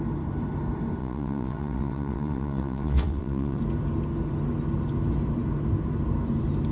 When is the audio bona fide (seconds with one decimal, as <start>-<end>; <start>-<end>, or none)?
0.0-1.0; 3.6-6.7